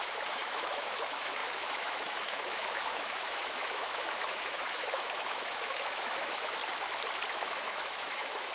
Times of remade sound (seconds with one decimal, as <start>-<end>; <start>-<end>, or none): 0.0-6.6; 7.3-8.5